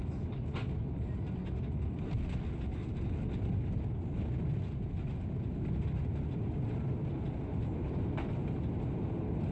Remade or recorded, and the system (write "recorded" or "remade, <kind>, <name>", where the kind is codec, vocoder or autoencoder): recorded